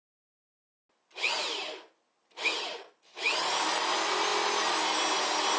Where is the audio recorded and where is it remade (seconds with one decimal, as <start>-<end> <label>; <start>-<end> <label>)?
0.0-2.2 recorded; 2.2-3.8 remade; 3.8-5.6 recorded